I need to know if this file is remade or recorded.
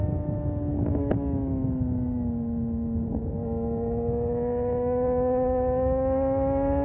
remade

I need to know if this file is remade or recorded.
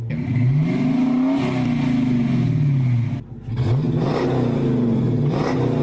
recorded